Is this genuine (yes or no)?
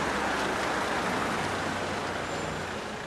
yes